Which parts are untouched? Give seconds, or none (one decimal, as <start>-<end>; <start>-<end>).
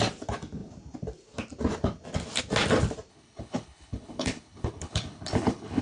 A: 0.0-3.1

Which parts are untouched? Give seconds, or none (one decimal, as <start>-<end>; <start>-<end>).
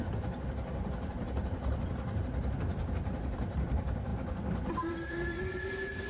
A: 0.0-6.1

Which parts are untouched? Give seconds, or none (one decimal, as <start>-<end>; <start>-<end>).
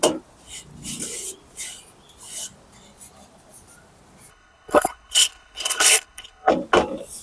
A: 0.0-4.3; 6.5-7.2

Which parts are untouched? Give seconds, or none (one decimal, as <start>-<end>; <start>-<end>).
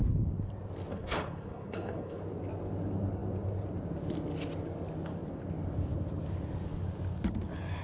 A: 0.0-0.9; 2.2-7.8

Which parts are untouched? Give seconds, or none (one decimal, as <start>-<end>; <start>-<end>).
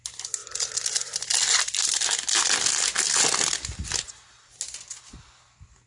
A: 0.0-5.9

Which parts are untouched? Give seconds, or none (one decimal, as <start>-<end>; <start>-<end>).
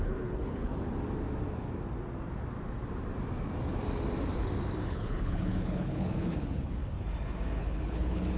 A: 0.7-4.9; 6.8-7.6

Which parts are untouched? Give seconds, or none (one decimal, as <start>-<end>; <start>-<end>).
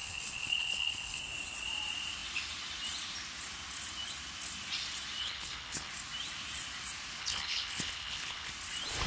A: 1.2-5.2; 5.9-7.2; 8.5-9.1